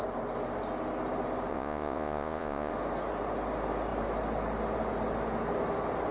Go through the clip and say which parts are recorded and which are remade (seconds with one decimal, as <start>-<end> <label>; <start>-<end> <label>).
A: 0.0-1.5 recorded; 1.5-2.7 remade; 2.7-6.1 recorded